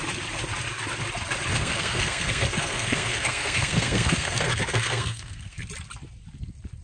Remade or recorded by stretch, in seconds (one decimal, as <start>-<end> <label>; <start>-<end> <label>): 0.0-1.5 recorded; 1.5-5.6 remade; 5.6-6.8 recorded